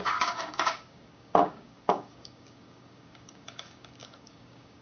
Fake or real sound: fake